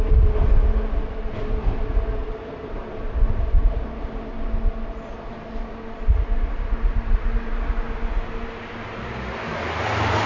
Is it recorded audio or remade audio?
recorded